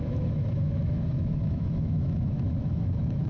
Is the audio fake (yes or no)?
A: yes